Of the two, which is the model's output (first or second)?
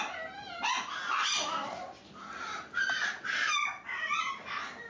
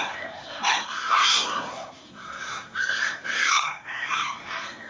second